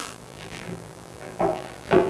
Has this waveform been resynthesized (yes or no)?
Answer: yes